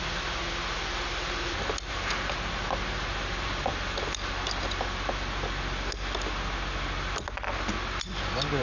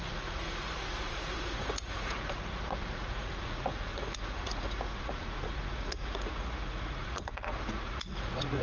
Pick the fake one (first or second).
second